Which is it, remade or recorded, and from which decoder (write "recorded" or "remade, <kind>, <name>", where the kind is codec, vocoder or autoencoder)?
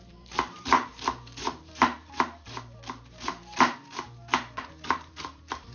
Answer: remade, vocoder, BigVGAN v2